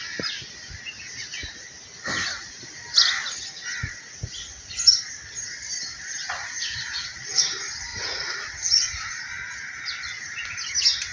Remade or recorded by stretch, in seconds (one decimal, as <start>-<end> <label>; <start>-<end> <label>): 0.0-6.2 recorded; 6.2-7.4 remade; 7.4-7.9 recorded; 7.9-9.2 remade; 9.2-11.1 recorded